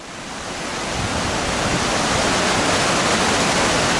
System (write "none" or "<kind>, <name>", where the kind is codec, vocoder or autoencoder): none